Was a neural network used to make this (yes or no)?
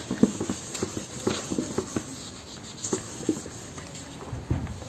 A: no